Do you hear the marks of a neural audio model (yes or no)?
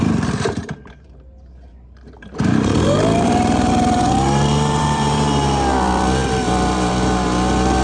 yes